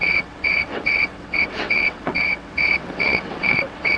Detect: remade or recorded remade